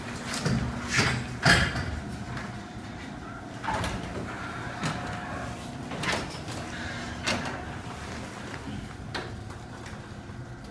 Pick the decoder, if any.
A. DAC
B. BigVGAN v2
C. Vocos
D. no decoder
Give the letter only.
D